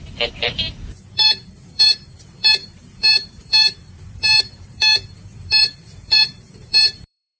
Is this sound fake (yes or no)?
yes